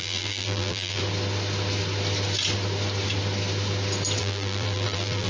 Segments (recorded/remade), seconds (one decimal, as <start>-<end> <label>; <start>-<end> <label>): 0.0-1.0 remade; 1.0-4.2 recorded; 4.2-5.3 remade

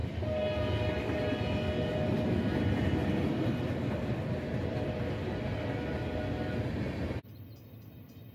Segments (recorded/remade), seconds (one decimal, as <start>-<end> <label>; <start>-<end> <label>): 0.0-8.3 recorded

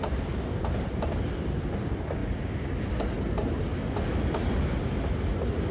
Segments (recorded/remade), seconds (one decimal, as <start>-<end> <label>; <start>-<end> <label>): 0.0-5.7 recorded